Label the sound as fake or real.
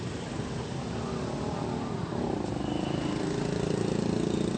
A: real